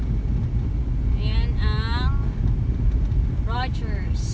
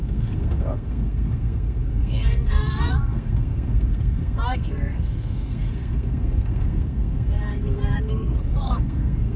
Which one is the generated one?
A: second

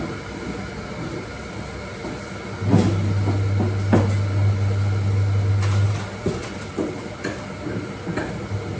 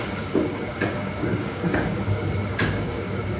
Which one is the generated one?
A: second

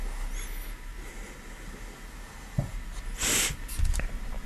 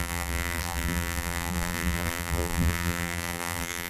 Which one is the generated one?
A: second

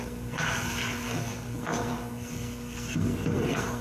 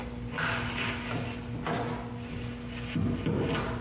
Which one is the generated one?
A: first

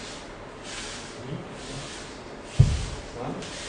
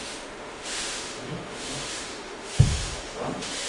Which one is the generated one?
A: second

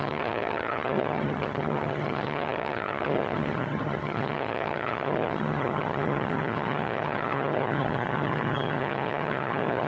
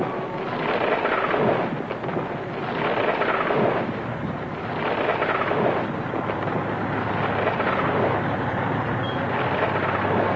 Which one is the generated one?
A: first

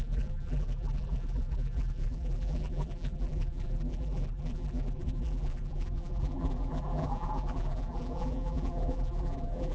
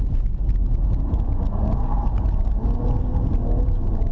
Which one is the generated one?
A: first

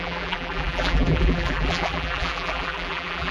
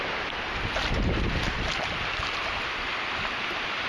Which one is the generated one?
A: first